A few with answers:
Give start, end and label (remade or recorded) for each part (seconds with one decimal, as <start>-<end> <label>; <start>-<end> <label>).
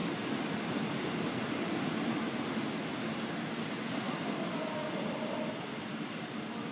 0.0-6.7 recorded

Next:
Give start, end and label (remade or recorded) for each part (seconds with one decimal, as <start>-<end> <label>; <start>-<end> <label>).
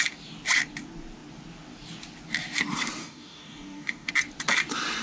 0.0-3.0 recorded; 3.0-4.1 remade; 4.1-5.0 recorded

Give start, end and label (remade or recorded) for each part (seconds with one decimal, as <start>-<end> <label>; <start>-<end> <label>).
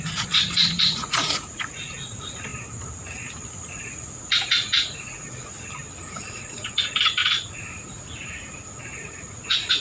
0.0-2.5 remade; 2.5-3.7 recorded; 3.7-5.5 remade; 5.5-6.1 recorded; 6.1-9.8 remade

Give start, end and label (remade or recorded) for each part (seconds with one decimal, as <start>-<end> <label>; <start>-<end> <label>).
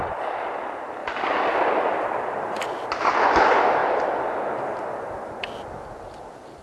0.0-6.6 recorded